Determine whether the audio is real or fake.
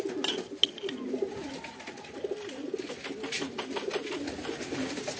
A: real